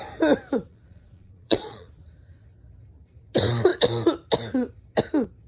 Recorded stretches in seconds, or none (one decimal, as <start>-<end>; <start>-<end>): 0.0-0.7; 1.9-5.5